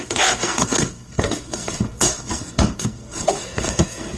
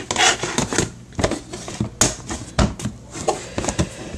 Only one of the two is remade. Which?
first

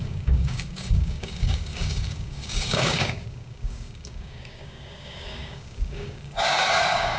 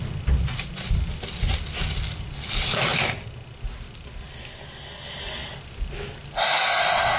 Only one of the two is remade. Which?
first